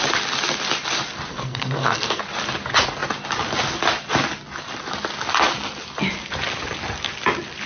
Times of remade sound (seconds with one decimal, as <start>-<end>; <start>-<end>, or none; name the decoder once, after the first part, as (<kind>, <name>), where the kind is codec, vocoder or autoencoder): 1.3-2.2 (codec, SNAC)